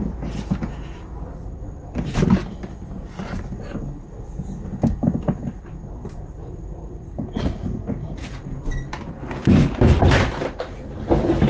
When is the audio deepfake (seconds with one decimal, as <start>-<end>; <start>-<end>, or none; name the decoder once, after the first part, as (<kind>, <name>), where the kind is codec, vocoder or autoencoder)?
6.4-8.4 (vocoder, Vocos)